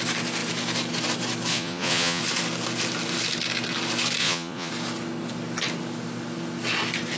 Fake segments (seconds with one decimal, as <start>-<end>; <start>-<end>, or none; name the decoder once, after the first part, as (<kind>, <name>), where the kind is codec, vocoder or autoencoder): 1.5-2.2 (vocoder, Vocos); 4.2-4.7